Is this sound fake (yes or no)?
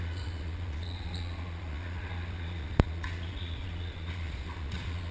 yes